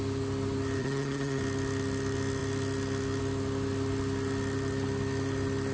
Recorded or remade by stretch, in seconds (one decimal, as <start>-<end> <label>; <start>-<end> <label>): 0.0-0.8 recorded; 0.8-1.4 remade; 1.4-5.7 recorded